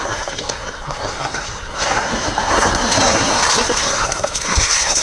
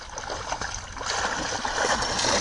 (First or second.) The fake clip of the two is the first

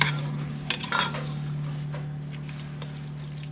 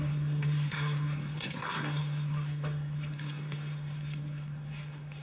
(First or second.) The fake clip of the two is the second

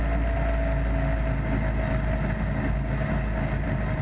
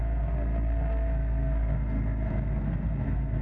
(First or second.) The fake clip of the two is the second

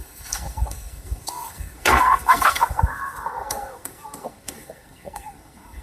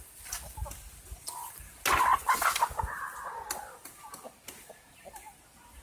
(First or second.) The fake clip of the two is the first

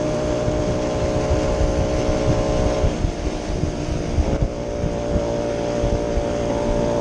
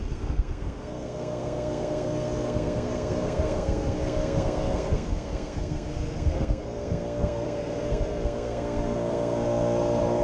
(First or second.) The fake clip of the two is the second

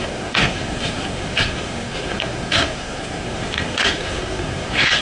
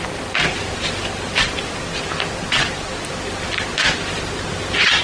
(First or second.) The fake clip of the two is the first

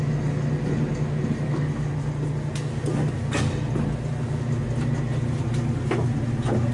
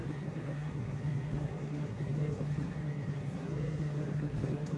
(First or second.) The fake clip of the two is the second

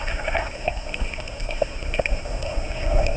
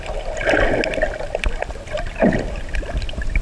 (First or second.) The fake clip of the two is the first